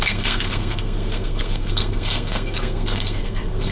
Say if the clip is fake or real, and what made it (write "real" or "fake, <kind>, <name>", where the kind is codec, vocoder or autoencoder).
fake, codec, SNAC